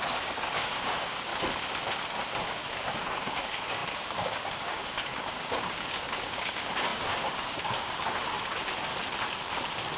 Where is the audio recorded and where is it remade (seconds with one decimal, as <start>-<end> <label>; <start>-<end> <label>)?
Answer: 0.0-1.3 remade; 1.3-2.4 recorded; 2.4-8.9 remade; 8.9-10.0 recorded